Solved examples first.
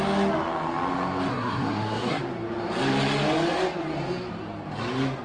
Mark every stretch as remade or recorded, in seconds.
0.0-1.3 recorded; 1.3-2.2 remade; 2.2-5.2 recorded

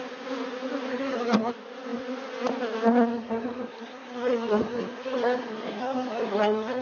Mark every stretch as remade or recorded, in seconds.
0.0-0.9 recorded; 0.9-1.5 remade; 1.5-3.1 recorded; 3.1-6.8 remade

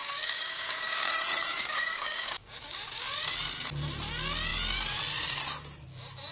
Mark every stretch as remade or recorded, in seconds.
0.0-1.1 remade; 1.1-1.5 recorded; 1.5-3.1 remade; 3.1-6.3 recorded